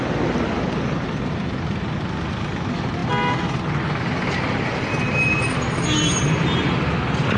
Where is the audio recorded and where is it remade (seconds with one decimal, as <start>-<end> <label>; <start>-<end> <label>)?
0.0-7.4 recorded